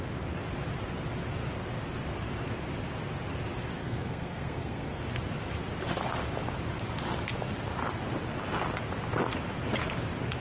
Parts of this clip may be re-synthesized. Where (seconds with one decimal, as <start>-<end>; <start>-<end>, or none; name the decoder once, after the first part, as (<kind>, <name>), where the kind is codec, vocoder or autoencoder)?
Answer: 3.8-5.0 (codec, SNAC)